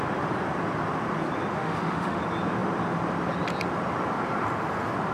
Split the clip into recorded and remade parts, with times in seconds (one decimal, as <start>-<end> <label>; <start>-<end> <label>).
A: 0.0-1.5 recorded; 1.5-2.2 remade; 2.2-5.1 recorded

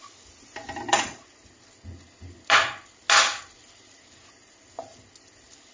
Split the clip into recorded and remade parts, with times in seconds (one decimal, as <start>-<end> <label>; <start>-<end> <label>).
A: 0.0-5.7 recorded

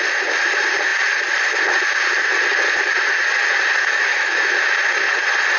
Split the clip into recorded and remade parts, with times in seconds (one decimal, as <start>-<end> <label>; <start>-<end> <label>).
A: 0.0-3.8 recorded; 3.8-4.6 remade; 4.6-5.6 recorded

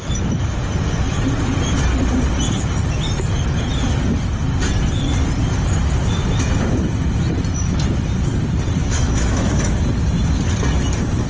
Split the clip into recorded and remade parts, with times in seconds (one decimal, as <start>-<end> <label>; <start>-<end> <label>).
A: 0.0-8.8 recorded; 8.8-9.7 remade; 9.7-11.3 recorded

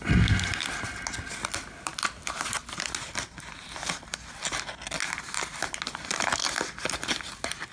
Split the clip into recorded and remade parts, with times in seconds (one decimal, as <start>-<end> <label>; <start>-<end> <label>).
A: 0.0-7.7 recorded

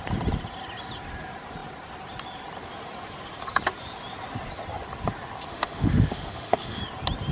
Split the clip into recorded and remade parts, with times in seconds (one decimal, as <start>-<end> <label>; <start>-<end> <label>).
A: 0.0-5.5 recorded; 5.5-6.8 remade; 6.8-7.3 recorded